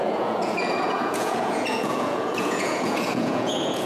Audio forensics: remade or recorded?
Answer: remade